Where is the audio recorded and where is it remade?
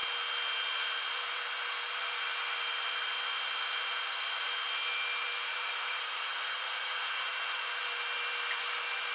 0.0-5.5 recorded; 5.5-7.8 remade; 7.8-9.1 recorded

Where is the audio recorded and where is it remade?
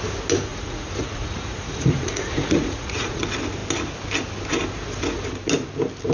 0.0-0.5 recorded; 0.5-3.2 remade; 3.2-6.1 recorded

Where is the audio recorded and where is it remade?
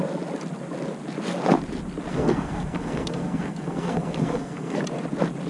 0.0-2.1 recorded; 2.1-4.8 remade; 4.8-5.5 recorded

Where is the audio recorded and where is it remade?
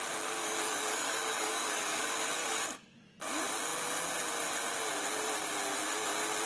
0.0-0.4 recorded; 0.4-2.0 remade; 2.0-2.4 recorded; 2.4-3.0 remade; 3.0-6.5 recorded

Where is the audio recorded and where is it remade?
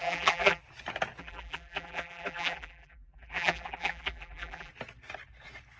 0.0-0.6 remade; 0.6-1.2 recorded; 1.2-4.7 remade; 4.7-5.8 recorded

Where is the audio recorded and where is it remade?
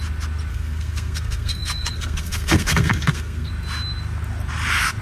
0.0-0.5 recorded; 0.5-3.5 remade; 3.5-5.0 recorded